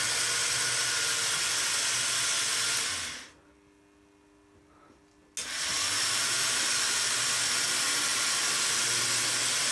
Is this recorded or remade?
recorded